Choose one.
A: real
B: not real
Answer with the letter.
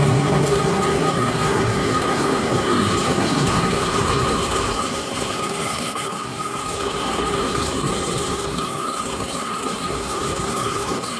B